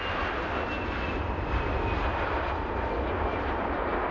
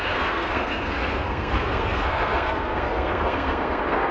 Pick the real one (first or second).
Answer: first